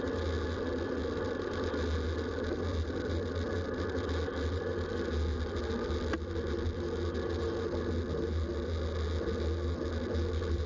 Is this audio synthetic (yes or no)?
no